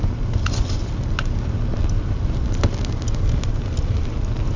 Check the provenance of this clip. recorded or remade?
recorded